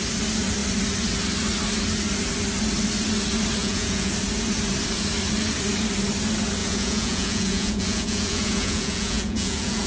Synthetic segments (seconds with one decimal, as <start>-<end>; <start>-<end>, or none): 3.6-4.1; 6.6-9.9